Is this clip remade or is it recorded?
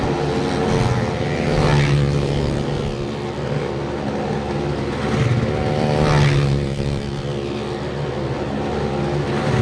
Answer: recorded